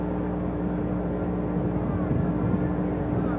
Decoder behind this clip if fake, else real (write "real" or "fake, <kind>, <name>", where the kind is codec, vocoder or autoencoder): real